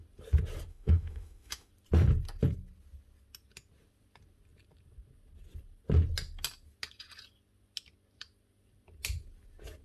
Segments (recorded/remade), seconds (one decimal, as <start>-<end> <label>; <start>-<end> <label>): 0.0-0.7 recorded; 0.7-1.7 remade; 1.7-9.8 recorded